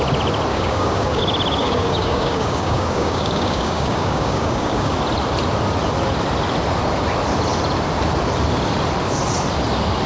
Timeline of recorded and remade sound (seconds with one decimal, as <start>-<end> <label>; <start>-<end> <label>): 0.0-0.5 recorded; 0.5-1.2 remade; 1.2-1.6 recorded; 1.6-4.9 remade; 4.9-10.1 recorded